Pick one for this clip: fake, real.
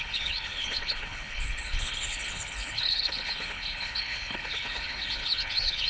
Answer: fake